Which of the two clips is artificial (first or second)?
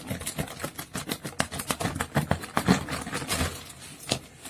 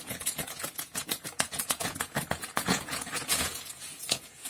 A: second